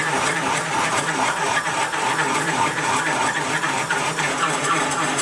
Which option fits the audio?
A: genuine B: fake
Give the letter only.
B